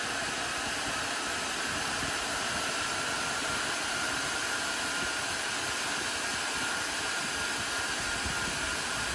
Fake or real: real